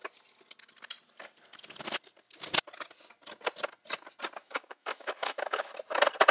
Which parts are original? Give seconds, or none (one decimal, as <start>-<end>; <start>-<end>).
0.0-4.4; 5.7-6.3